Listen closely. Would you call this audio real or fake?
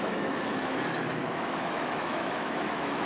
fake